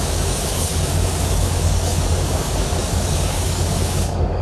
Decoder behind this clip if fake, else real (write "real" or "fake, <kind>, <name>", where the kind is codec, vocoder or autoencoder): fake, codec, DAC